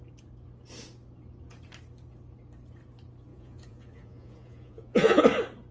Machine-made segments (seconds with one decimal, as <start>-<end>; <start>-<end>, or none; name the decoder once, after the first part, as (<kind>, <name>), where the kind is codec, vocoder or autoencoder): 3.3-5.2 (vocoder, Vocos)